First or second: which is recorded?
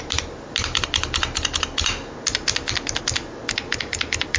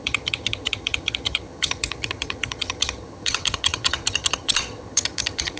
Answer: first